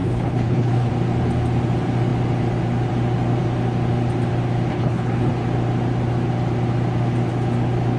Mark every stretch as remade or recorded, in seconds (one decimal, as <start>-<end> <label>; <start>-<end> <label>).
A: 0.0-0.9 remade; 0.9-4.7 recorded; 4.7-5.3 remade; 5.3-8.0 recorded